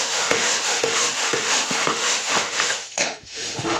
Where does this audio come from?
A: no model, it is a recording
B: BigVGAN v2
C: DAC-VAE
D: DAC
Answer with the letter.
C